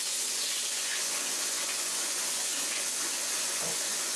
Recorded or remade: remade